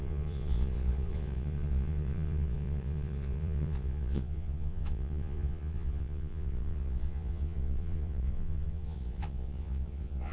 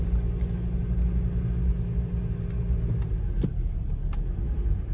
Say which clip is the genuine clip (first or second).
second